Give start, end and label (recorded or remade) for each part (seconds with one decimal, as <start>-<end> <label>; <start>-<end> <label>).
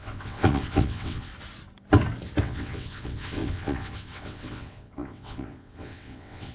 0.0-1.3 remade; 1.3-2.4 recorded; 2.4-6.5 remade